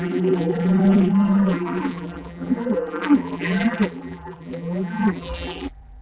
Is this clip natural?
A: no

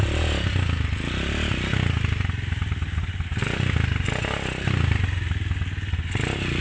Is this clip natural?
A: yes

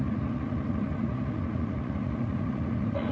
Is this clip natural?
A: no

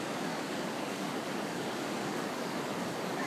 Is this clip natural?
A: no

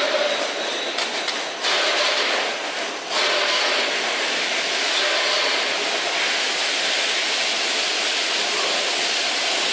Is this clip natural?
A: yes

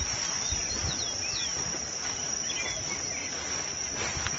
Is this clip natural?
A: yes